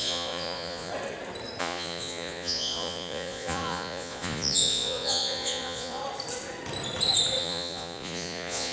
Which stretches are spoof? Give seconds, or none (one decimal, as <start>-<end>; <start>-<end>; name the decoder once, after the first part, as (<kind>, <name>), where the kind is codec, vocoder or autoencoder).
0.0-0.9 (vocoder, Vocos); 1.6-6.0; 7.4-8.7